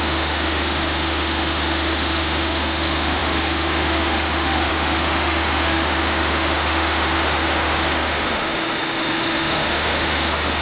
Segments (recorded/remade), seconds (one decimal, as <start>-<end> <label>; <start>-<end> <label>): 0.0-10.6 remade

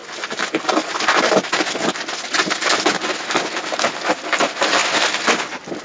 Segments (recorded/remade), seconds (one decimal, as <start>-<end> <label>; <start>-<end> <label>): 0.0-5.8 recorded

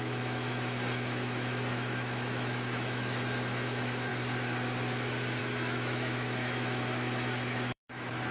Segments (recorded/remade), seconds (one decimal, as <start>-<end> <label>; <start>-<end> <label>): 0.0-4.1 remade; 4.1-5.4 recorded; 5.4-8.3 remade

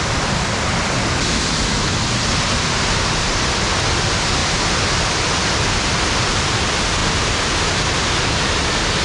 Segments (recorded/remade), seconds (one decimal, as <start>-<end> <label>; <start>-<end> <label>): 0.0-9.0 recorded

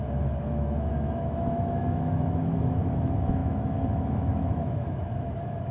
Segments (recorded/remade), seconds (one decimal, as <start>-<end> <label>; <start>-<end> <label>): 0.0-5.7 remade

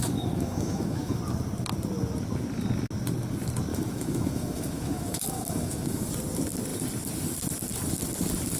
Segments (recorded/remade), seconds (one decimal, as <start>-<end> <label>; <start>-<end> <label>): 0.0-1.2 remade; 1.2-3.7 recorded; 3.7-6.1 remade; 6.1-8.6 recorded

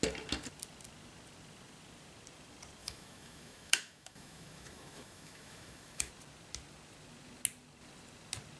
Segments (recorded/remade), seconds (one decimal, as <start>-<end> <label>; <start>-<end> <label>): 0.0-2.8 recorded; 2.8-6.1 remade; 6.1-8.6 recorded

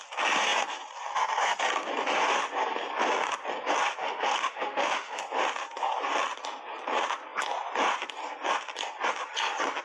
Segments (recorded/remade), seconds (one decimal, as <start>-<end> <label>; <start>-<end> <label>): 0.0-4.0 recorded; 4.0-5.2 remade; 5.2-9.8 recorded